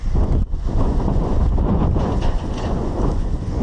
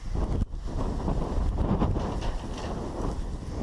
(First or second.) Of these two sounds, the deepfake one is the first